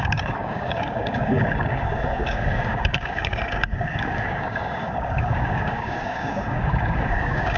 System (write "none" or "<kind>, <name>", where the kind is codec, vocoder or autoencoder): codec, DAC